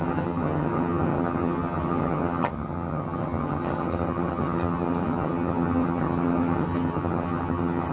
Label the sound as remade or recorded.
remade